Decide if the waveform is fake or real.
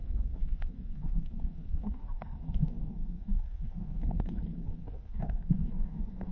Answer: fake